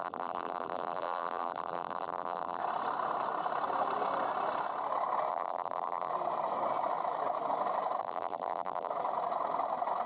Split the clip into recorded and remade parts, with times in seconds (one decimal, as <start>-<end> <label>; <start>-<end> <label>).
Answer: 0.0-2.6 remade; 2.6-5.3 recorded; 5.3-6.1 remade; 6.1-8.0 recorded; 8.0-8.9 remade; 8.9-10.1 recorded